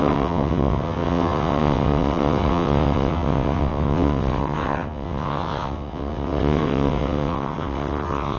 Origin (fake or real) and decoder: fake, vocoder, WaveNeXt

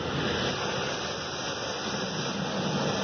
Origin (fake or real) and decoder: real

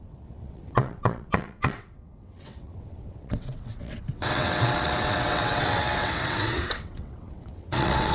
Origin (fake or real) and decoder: fake, vocoder, WaveNeXt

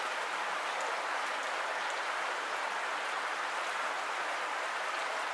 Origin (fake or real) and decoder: real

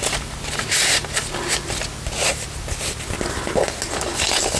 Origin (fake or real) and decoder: real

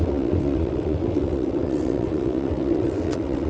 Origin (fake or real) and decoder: fake, vocoder, WaveNeXt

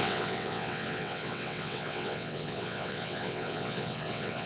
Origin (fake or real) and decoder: fake, vocoder, WaveNeXt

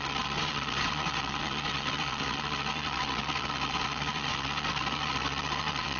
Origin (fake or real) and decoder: fake, vocoder, WaveNeXt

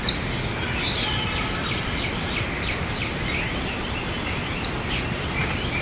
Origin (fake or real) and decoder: real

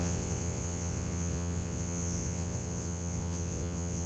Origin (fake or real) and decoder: fake, vocoder, WaveNeXt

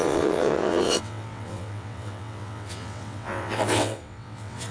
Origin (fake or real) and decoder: fake, vocoder, WaveNeXt